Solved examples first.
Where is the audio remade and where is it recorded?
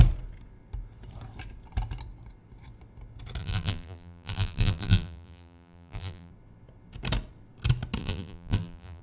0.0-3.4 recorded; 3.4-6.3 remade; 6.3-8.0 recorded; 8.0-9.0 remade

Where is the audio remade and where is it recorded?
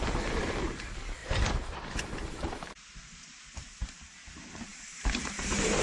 0.0-1.2 recorded; 1.2-3.9 remade; 3.9-4.7 recorded; 4.7-5.8 remade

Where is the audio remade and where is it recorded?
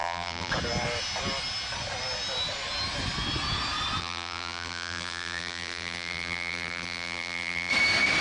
0.0-0.5 remade; 0.5-4.0 recorded; 4.0-7.7 remade; 7.7-8.2 recorded